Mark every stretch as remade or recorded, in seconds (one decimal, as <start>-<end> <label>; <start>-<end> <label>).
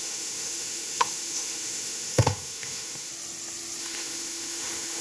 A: 0.0-3.1 remade; 3.1-3.8 recorded; 3.8-5.0 remade